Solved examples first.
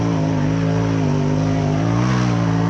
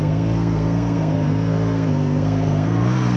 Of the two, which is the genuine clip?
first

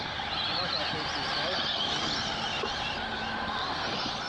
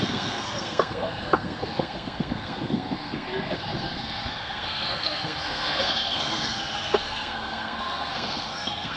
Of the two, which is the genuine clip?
first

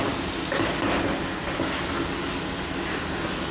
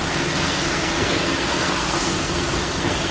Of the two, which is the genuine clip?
first